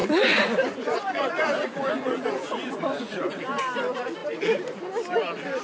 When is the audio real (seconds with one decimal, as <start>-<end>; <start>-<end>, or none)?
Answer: 3.4-5.6